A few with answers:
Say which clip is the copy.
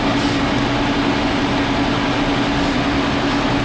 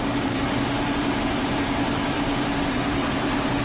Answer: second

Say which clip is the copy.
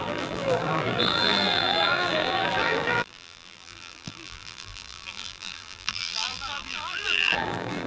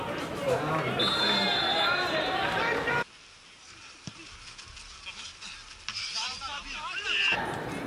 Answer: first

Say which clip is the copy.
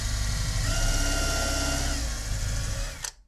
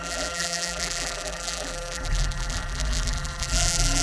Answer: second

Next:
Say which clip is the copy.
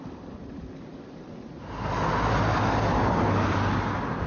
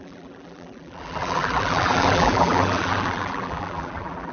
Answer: second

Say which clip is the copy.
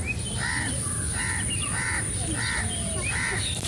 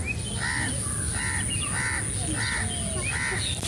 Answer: first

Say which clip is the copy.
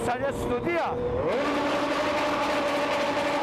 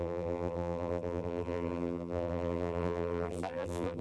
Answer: second